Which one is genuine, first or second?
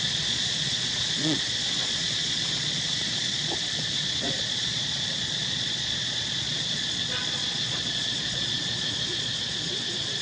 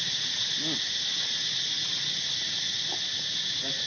second